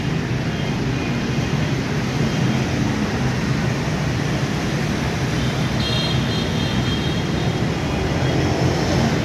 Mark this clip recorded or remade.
recorded